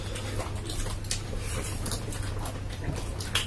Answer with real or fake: real